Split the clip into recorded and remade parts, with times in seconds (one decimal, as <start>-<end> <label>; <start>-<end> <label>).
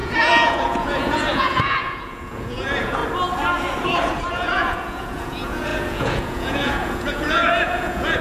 0.0-3.0 remade; 3.0-4.2 recorded; 4.2-8.2 remade